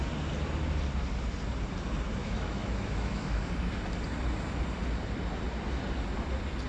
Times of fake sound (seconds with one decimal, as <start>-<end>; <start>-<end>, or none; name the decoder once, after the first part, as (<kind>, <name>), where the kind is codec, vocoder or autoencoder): 2.2-3.5 (autoencoder, DAC-VAE)